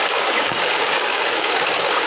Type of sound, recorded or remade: remade